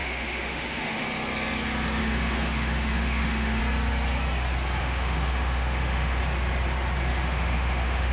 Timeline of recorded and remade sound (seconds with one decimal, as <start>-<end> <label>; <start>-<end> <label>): 0.0-1.0 remade; 1.0-2.0 recorded; 2.0-3.6 remade; 3.6-4.8 recorded; 4.8-6.2 remade; 6.2-7.1 recorded; 7.1-8.1 remade